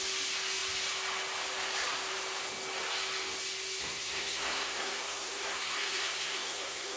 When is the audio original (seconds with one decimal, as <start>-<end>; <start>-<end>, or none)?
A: 0.0-3.8